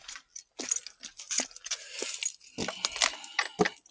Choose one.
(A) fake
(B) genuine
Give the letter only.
B